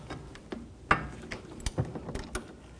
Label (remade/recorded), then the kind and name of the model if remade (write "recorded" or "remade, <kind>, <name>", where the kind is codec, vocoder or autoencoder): recorded